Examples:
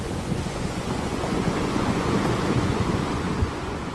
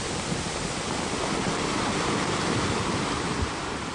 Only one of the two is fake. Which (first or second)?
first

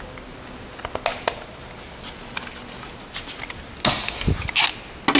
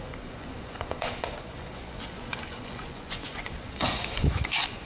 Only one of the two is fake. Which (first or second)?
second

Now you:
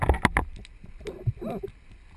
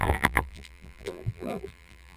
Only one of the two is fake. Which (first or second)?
second